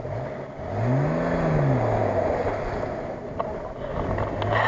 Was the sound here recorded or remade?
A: recorded